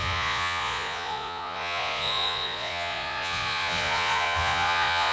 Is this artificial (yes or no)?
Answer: yes